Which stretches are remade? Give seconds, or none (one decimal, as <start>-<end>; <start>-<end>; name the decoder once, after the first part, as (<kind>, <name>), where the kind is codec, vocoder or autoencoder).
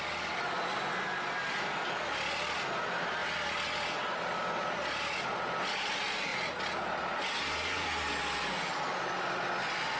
none